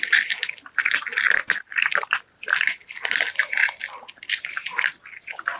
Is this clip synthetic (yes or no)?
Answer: no